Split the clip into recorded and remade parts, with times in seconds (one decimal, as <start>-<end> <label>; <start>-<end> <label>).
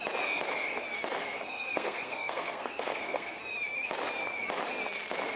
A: 0.0-1.2 recorded; 1.2-3.4 remade; 3.4-5.4 recorded